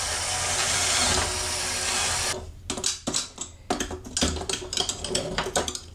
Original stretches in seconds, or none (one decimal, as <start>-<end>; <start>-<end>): 0.0-5.9